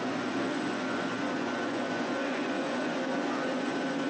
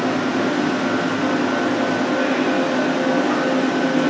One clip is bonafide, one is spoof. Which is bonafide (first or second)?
second